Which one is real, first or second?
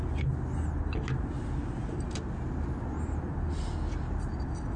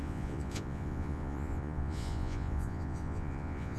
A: first